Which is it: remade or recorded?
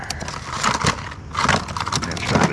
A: recorded